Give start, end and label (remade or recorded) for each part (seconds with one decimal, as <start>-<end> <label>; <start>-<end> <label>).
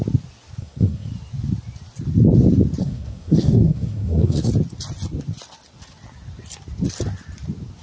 0.0-0.6 recorded; 0.6-1.1 remade; 1.1-2.8 recorded; 2.8-4.5 remade; 4.5-7.8 recorded